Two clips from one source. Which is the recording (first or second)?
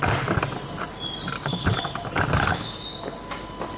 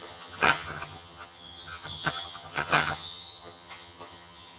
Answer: first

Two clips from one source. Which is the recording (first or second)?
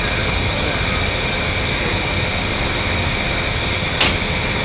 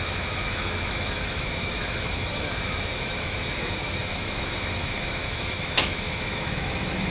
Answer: first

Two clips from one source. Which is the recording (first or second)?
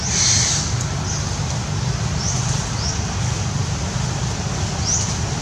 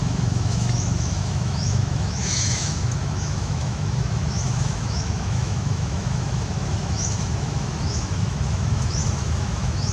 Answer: first